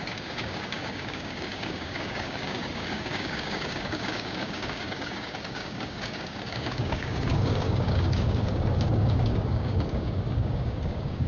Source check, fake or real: fake